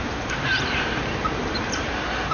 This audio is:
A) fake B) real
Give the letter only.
A